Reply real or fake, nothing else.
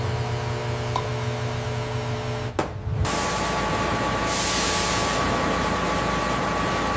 real